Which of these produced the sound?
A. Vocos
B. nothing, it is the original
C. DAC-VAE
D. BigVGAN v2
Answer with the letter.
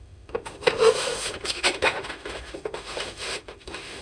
C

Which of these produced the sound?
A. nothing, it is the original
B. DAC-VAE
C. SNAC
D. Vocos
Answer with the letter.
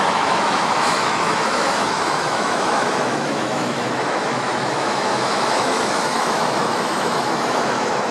B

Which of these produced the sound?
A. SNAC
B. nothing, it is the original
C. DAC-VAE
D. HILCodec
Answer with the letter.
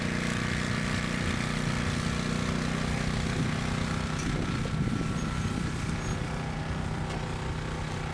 B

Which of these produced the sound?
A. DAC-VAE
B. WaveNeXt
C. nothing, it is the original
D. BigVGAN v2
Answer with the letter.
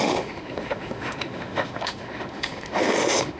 A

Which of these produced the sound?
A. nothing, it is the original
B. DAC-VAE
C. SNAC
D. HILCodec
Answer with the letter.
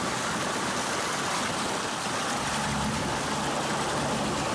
A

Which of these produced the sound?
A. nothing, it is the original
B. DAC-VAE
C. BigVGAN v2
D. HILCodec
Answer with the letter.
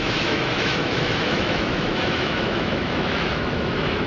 B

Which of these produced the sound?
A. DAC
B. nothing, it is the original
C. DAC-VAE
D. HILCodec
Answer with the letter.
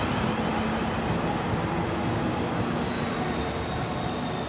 B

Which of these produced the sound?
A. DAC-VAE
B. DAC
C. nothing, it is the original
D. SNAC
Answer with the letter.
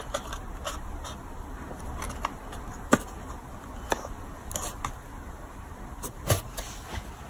C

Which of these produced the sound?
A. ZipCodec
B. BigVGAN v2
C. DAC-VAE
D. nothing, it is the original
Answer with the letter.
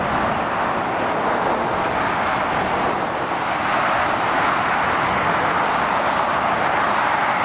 D